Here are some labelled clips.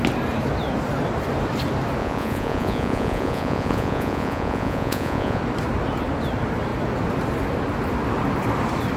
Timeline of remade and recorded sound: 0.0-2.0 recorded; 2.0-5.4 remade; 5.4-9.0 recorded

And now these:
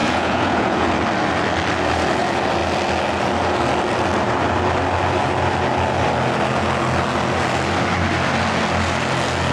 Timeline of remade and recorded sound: 0.0-0.9 remade; 0.9-9.5 recorded

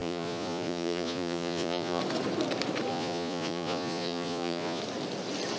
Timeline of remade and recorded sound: 0.0-2.0 remade; 2.0-2.9 recorded; 2.9-4.8 remade; 4.8-5.6 recorded

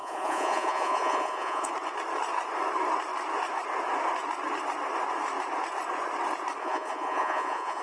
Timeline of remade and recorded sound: 0.0-1.7 remade; 1.7-6.6 recorded; 6.6-7.8 remade

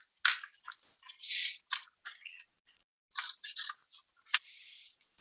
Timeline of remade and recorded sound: 0.0-2.0 recorded; 2.0-3.0 remade; 3.0-4.6 recorded; 4.6-5.2 remade

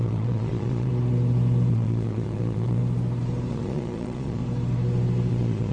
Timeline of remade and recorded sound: 0.0-0.9 remade; 0.9-1.7 recorded; 1.7-2.8 remade; 2.8-3.5 recorded; 3.5-4.4 remade; 4.4-5.3 recorded; 5.3-5.7 remade